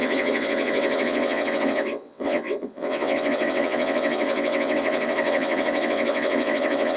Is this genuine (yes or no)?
no